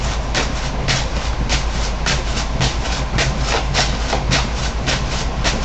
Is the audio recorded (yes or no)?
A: yes